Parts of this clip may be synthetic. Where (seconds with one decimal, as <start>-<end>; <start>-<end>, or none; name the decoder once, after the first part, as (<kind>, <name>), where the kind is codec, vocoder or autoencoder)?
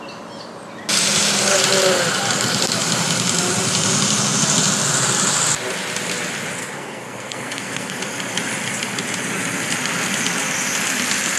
6.6-8.0 (codec, SNAC)